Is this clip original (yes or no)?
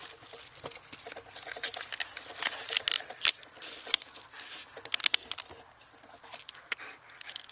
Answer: yes